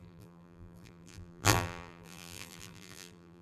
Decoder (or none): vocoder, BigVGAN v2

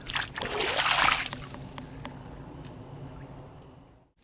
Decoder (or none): none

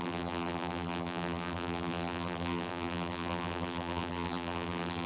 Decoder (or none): vocoder, BigVGAN v2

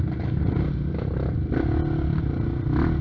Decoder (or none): none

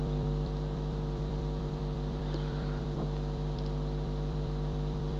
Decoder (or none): vocoder, BigVGAN v2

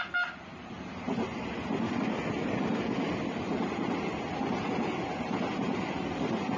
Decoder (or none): none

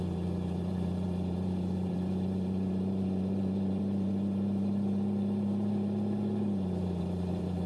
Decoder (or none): vocoder, BigVGAN v2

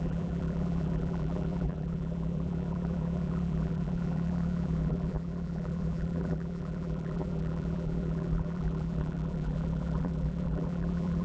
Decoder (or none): vocoder, BigVGAN v2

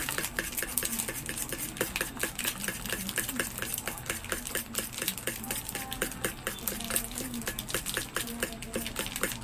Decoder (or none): none